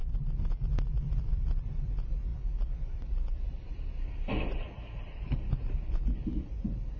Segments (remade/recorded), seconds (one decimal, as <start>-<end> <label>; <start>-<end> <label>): 0.0-1.0 recorded; 1.0-7.0 remade